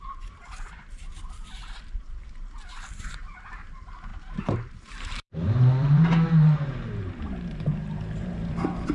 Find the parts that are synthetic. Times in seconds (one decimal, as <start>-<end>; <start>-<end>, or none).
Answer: 0.0-8.9

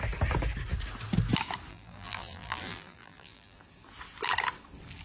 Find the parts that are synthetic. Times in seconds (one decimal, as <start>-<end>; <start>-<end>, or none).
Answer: 1.7-3.6

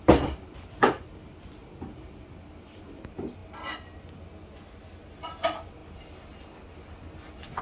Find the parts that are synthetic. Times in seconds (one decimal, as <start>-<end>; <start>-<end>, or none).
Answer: none

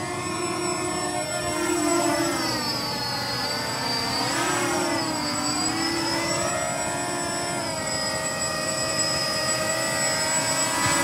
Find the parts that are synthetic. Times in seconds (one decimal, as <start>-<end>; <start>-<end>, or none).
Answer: 1.9-6.5; 7.6-9.7